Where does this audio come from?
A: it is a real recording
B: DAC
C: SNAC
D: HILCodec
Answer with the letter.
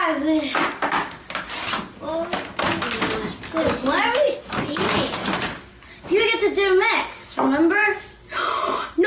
A